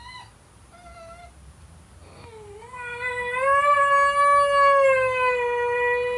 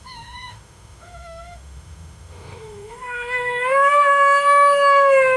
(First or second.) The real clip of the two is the first